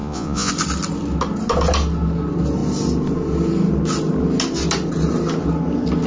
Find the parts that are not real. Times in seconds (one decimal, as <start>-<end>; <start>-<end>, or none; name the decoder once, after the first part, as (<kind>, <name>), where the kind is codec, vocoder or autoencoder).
0.0-0.5 (vocoder, Vocos)